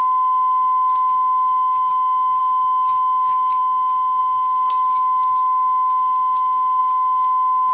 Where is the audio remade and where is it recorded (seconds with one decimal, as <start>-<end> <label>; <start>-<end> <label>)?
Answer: 0.0-7.7 recorded